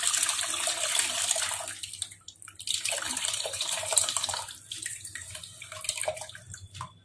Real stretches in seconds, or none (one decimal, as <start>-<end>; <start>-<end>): 0.0-3.1; 4.2-4.9; 5.4-7.0